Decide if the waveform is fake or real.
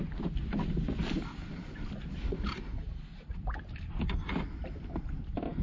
real